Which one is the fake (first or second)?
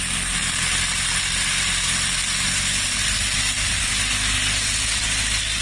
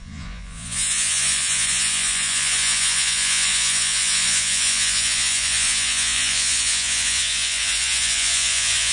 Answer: second